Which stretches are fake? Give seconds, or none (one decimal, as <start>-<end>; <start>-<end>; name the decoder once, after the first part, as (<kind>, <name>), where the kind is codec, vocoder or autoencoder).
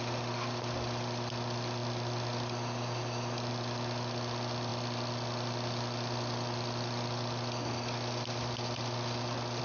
none